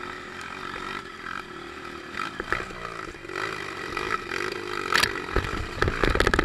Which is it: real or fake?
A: real